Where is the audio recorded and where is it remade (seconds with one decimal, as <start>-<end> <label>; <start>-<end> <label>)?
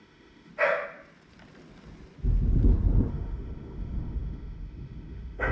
0.0-0.5 remade; 0.5-3.1 recorded; 3.1-5.5 remade